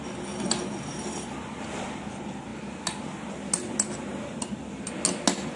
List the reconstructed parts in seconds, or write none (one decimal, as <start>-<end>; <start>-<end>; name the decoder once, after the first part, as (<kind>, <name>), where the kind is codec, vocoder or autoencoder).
none